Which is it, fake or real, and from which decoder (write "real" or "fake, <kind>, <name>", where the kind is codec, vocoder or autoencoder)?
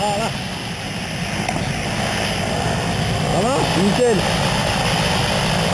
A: real